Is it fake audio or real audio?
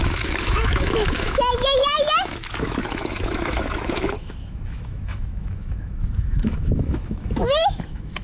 fake